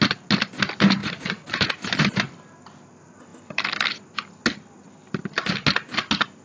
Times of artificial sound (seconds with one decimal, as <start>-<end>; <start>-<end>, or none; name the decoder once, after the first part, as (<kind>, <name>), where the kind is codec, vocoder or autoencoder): 1.0-1.7 (vocoder, Vocos)